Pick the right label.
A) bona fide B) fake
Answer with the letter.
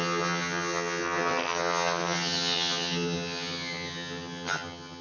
B